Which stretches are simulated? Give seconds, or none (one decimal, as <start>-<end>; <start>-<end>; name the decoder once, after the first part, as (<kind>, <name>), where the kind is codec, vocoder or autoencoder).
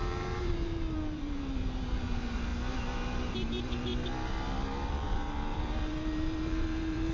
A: 0.0-2.5 (vocoder, BigVGAN v2); 3.2-3.9; 4.9-7.1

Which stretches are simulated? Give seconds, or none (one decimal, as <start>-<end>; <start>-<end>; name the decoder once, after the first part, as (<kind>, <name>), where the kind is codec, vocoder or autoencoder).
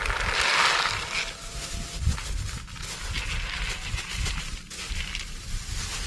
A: none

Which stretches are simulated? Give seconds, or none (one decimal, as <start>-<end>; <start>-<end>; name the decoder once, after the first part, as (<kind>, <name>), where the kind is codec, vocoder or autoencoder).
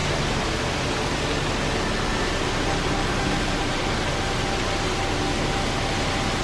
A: 0.0-0.6 (vocoder, BigVGAN v2); 2.1-3.8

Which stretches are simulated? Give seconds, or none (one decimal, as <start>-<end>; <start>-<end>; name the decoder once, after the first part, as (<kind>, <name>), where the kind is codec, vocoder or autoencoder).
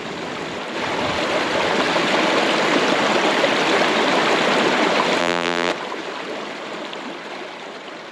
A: 5.2-5.7 (vocoder, BigVGAN v2)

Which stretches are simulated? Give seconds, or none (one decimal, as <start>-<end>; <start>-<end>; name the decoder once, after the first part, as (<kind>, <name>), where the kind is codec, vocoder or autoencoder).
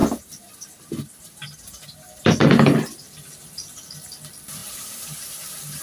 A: 0.0-5.8 (vocoder, BigVGAN v2)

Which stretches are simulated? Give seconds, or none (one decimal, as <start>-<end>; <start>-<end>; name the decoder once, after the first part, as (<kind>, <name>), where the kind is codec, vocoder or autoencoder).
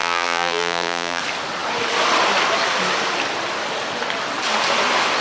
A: 0.0-1.2 (vocoder, BigVGAN v2)